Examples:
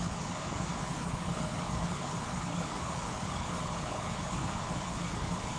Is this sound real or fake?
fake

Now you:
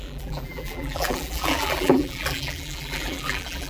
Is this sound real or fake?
fake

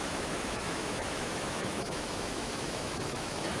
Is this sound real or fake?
fake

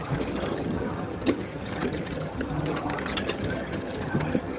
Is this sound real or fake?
fake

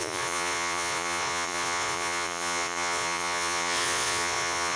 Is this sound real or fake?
fake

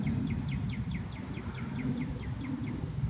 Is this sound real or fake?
real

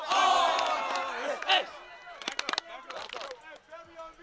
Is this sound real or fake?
real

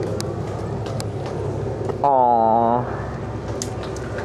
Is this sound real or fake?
real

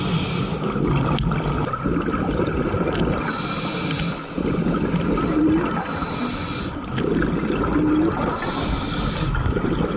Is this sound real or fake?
real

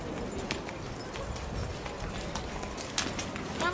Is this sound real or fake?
real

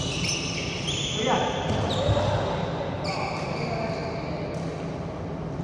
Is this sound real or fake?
real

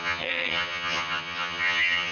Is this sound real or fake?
fake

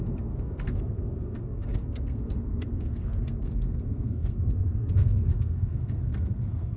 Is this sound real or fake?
fake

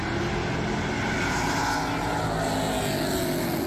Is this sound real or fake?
real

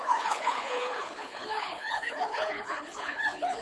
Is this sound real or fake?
fake